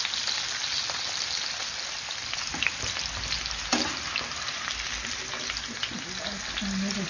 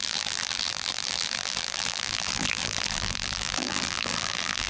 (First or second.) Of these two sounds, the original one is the first